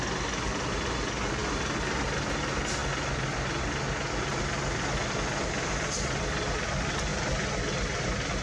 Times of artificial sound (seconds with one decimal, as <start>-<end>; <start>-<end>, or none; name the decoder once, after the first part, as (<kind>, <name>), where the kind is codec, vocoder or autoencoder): none